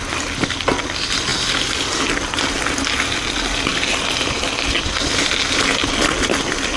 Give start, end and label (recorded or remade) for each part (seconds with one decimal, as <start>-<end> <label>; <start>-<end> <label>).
0.0-6.8 recorded